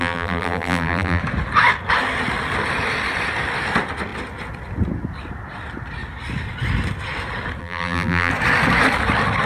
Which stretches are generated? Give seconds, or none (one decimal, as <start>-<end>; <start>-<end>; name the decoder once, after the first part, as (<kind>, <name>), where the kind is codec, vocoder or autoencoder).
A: 0.0-1.2 (vocoder, BigVGAN v2); 7.6-8.3